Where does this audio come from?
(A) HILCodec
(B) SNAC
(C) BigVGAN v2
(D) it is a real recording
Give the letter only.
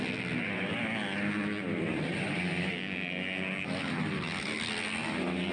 D